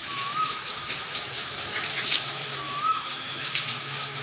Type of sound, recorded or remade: remade